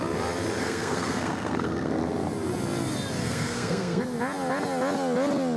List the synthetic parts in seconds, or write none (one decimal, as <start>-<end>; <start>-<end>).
0.6-1.9; 3.2-4.0